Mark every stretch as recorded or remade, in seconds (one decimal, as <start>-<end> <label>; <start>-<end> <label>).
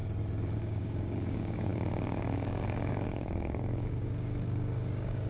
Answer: 0.0-0.6 recorded; 0.6-5.3 remade